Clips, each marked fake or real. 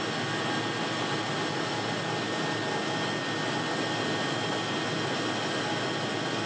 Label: real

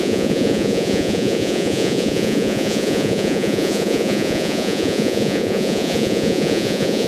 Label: fake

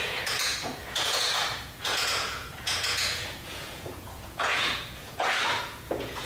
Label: fake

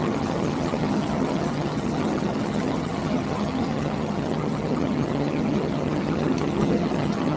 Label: fake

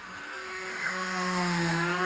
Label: fake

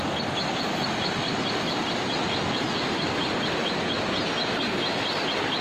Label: real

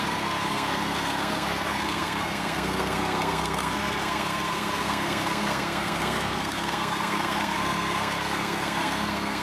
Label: fake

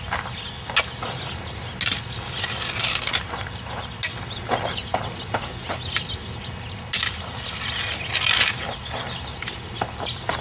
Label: real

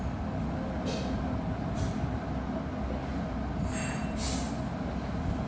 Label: real